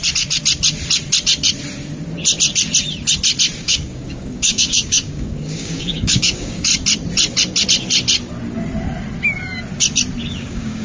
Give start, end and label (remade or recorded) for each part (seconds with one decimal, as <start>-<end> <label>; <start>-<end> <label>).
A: 0.0-3.6 recorded; 3.6-6.7 remade; 6.7-10.3 recorded; 10.3-10.8 remade